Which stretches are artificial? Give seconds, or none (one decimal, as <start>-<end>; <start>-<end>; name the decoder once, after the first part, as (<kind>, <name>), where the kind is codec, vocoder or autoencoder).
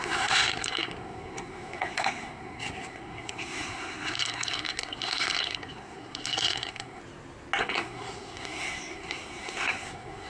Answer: 0.0-7.0 (codec, SNAC); 7.6-10.3